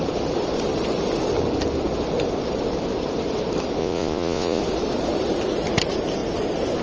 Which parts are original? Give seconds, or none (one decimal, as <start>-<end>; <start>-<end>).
0.0-3.8; 4.6-6.8